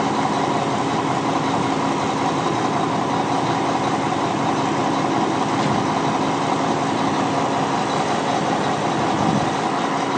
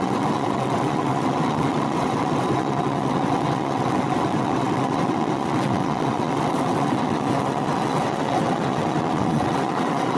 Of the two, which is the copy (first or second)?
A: second